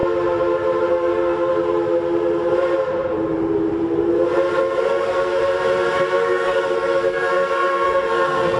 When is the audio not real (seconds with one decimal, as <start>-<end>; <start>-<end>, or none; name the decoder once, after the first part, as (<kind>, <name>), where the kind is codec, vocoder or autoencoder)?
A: 0.9-1.5 (codec, SNAC); 4.6-5.4; 6.1-8.6